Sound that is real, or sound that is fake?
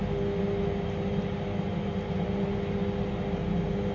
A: real